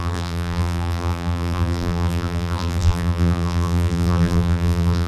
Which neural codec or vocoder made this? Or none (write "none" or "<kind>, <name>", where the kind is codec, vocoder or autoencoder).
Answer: vocoder, BigVGAN v2